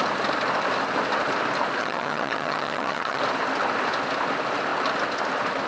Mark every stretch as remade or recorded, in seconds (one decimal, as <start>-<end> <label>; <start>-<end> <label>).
0.0-1.8 recorded; 1.8-3.2 remade; 3.2-5.7 recorded